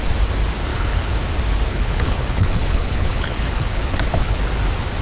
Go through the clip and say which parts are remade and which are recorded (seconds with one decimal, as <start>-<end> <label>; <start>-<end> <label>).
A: 0.0-0.7 recorded; 0.7-1.2 remade; 1.2-1.7 recorded; 1.7-4.4 remade; 4.4-5.0 recorded